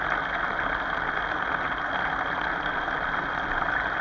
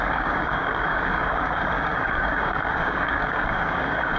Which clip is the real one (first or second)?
first